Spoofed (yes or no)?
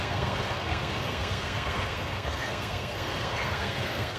yes